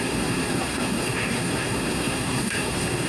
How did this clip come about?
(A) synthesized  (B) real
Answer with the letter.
A